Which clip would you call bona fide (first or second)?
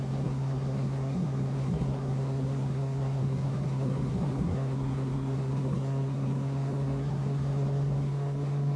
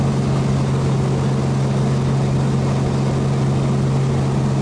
second